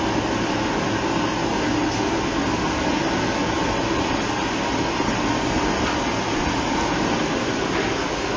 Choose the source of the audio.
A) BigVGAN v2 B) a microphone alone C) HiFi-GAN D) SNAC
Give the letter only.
B